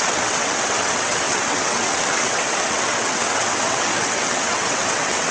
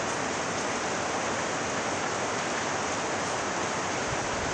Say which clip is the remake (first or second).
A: first